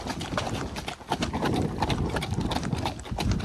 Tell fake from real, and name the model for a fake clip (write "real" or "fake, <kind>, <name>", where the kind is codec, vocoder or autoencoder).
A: real